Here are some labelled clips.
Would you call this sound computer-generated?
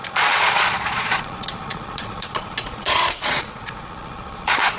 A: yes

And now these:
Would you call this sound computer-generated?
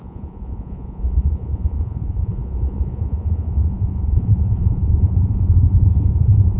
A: yes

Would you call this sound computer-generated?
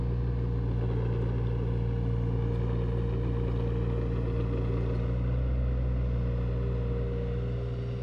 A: no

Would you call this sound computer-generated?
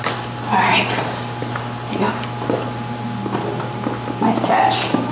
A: no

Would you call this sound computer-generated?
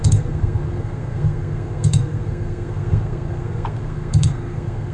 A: yes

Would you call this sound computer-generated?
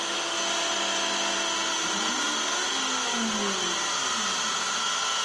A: no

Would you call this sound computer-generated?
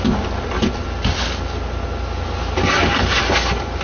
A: no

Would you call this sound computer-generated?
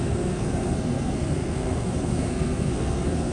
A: yes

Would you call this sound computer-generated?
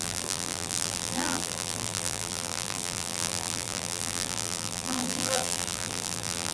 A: yes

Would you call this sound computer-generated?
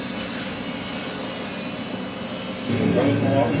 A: no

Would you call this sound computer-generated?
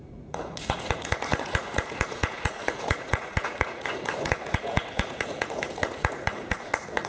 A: yes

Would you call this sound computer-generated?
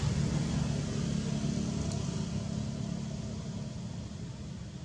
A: no